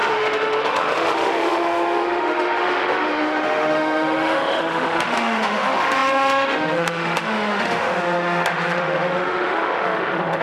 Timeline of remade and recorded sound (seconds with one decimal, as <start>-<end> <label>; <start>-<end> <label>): 0.0-10.4 remade